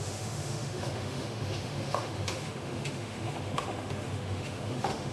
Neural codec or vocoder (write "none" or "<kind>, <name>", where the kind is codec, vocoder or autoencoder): autoencoder, DAC-VAE